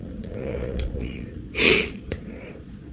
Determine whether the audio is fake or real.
fake